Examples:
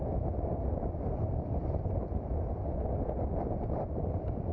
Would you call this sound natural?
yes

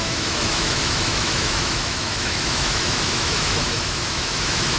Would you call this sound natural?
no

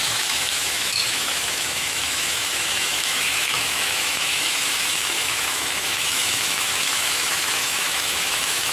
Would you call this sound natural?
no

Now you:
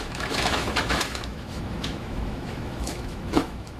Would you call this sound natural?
no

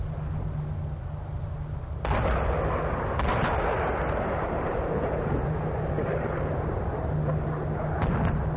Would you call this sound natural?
yes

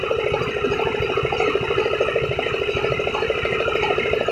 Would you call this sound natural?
yes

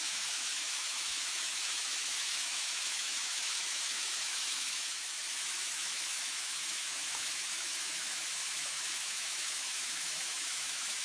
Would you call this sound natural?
no